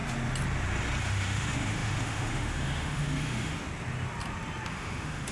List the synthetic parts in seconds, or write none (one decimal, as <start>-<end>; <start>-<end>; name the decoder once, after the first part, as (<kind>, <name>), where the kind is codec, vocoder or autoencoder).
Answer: 1.0-3.5 (autoencoder, DAC-VAE); 4.7-5.3